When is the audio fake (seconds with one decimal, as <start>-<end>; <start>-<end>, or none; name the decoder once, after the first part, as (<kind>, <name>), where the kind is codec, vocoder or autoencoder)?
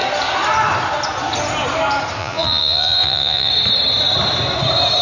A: 2.2-3.5 (vocoder, Vocos)